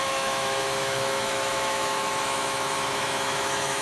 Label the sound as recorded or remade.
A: remade